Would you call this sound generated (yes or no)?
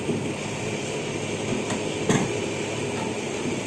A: yes